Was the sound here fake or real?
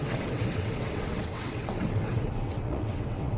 fake